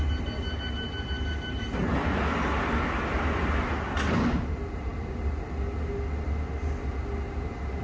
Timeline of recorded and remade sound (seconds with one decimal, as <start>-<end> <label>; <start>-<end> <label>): 0.0-7.8 recorded